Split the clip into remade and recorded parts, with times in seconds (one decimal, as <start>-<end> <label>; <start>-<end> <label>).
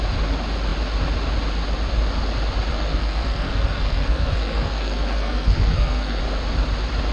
0.0-2.7 recorded; 2.7-6.2 remade; 6.2-7.1 recorded